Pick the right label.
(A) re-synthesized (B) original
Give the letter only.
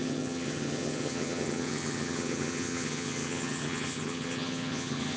A